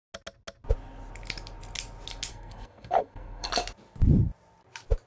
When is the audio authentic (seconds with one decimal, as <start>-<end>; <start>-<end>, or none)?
0.0-2.3; 3.5-5.1